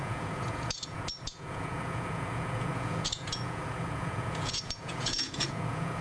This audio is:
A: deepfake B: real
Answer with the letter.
A